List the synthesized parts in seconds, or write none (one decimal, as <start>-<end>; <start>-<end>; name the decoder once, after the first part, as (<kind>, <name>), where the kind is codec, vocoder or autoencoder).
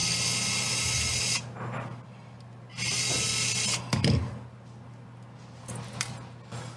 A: none